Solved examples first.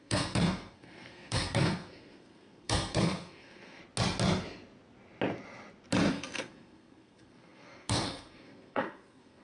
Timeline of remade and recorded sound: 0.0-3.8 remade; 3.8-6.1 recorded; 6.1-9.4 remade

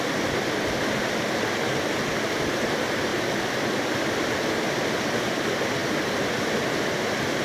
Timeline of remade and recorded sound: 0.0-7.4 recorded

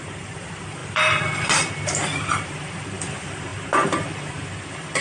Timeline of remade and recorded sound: 0.0-5.0 remade

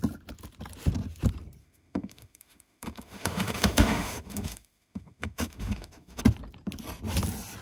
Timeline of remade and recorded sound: 0.0-1.6 recorded; 1.6-6.2 remade; 6.2-7.6 recorded